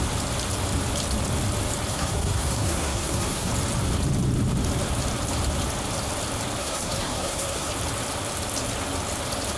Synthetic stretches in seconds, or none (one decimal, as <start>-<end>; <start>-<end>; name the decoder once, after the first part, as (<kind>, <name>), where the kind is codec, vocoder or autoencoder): 1.9-3.5 (codec, SNAC); 6.6-7.7